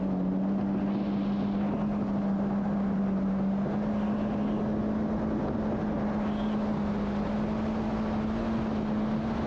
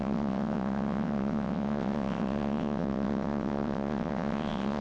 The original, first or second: first